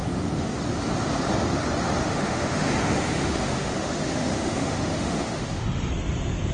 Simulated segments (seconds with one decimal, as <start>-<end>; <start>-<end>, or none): 0.0-0.5; 2.0-5.9